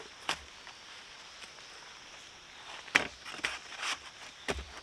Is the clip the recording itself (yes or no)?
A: yes